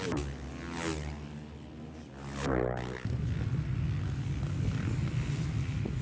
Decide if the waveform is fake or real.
real